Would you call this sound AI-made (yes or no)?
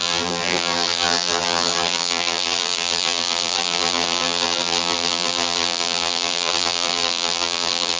yes